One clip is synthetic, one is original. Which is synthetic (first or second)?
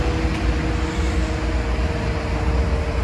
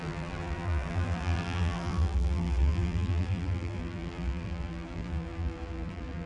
second